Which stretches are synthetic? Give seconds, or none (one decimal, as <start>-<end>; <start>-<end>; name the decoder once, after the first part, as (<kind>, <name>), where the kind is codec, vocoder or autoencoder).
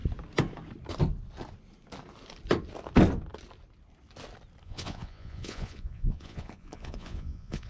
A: 4.6-7.7 (vocoder, Vocos)